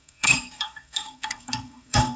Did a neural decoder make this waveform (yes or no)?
yes